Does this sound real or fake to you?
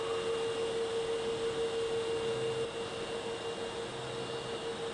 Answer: real